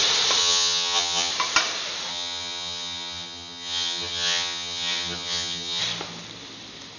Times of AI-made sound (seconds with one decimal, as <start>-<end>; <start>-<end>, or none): 0.4-1.3; 2.1-5.8